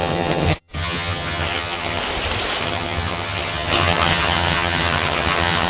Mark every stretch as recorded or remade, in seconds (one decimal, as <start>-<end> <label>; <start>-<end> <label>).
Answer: 0.0-2.0 remade; 2.0-2.6 recorded; 2.6-5.7 remade